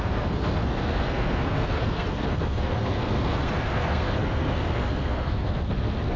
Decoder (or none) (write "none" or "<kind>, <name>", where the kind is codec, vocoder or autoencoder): codec, SNAC